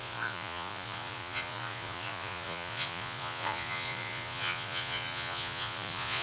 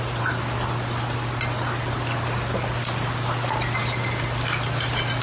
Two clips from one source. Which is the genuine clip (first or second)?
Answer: second